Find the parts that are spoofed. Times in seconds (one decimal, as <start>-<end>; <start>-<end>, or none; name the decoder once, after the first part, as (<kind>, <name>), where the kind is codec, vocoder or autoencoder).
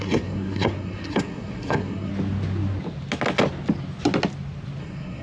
0.0-2.1 (codec, SNAC); 4.8-5.2